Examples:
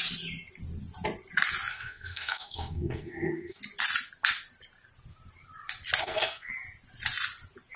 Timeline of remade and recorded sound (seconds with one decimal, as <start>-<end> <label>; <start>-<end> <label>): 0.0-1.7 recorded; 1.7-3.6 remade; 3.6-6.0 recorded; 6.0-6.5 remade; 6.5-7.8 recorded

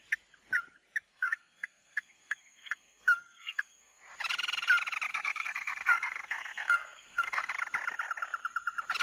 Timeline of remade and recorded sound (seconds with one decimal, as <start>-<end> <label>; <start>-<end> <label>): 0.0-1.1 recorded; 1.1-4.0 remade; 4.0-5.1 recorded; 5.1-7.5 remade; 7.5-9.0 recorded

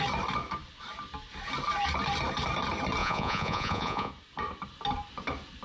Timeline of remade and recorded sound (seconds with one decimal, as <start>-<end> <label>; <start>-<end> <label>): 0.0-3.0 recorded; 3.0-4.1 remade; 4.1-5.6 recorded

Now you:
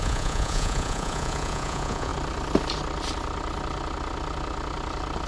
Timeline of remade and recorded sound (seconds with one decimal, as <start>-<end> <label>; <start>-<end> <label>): 0.0-2.1 remade; 2.1-5.3 recorded

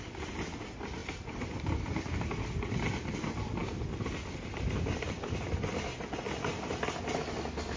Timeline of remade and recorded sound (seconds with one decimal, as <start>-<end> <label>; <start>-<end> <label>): 0.0-1.0 recorded; 1.0-2.2 remade; 2.2-7.8 recorded